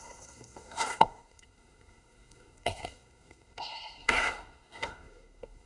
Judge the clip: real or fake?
fake